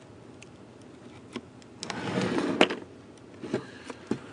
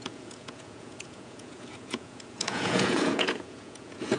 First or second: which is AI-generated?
second